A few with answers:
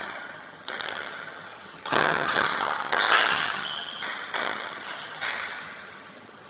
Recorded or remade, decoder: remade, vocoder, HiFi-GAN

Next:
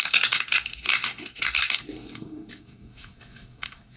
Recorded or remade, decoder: remade, codec, SNAC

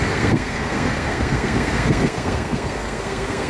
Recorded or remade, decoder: remade, codec, SNAC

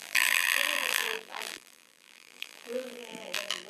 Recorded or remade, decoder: remade, vocoder, BigVGAN v2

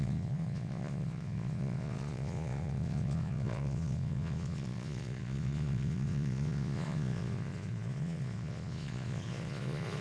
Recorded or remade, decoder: remade, vocoder, Vocos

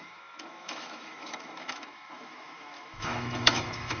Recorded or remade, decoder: remade, autoencoder, DAC-VAE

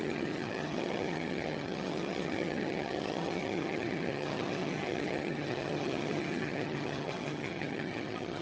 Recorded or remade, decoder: remade, vocoder, HiFi-GAN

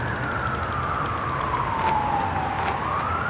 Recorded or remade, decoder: recorded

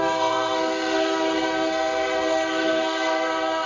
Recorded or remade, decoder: remade, codec, SNAC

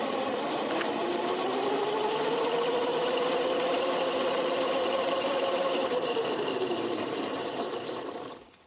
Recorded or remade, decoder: remade, vocoder, BigVGAN v2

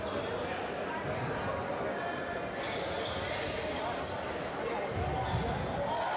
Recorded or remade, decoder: recorded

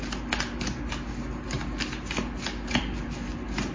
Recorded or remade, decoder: recorded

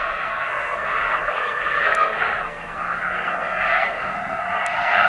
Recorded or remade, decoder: remade, codec, SNAC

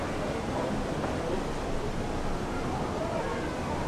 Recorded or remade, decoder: recorded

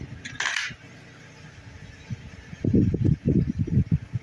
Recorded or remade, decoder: recorded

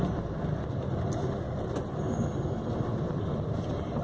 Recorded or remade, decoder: recorded